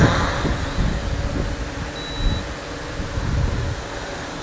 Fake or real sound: real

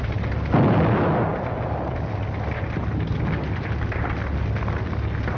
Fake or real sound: real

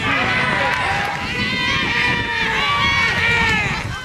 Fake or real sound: real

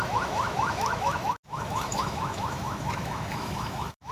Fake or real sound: fake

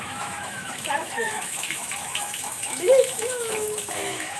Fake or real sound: fake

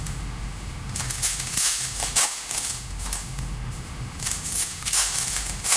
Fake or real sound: fake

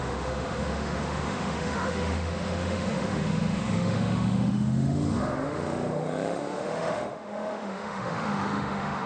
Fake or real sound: fake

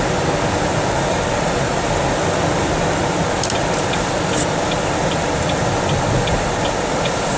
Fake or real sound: real